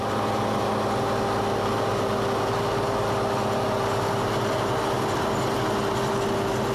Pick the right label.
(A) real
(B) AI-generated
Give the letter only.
A